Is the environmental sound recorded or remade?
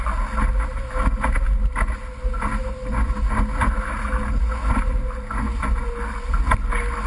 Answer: recorded